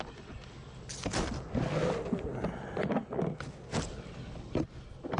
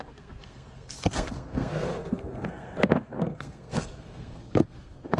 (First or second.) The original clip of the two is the first